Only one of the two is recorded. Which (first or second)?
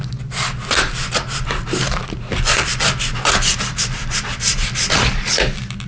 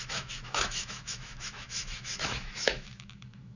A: first